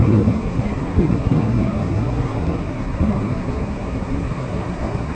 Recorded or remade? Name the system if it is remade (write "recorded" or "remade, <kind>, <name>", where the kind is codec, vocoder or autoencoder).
remade, codec, SNAC